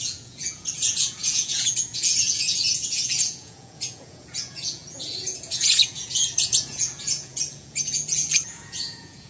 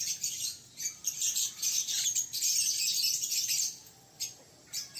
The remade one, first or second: first